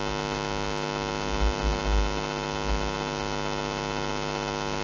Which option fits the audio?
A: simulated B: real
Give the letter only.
B